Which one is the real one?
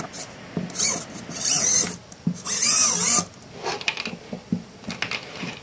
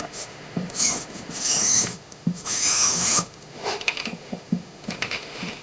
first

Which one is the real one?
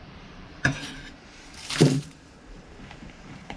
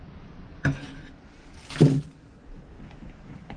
second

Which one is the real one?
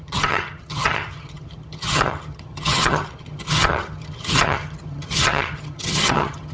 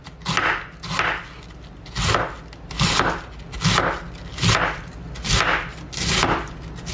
second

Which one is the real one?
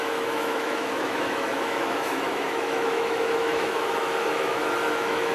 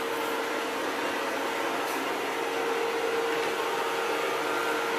second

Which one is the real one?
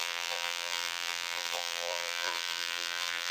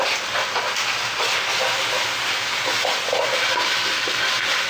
second